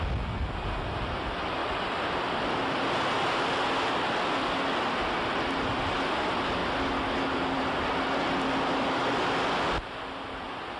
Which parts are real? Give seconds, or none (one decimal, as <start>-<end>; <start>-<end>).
0.0-1.6; 2.8-6.6; 9.3-10.8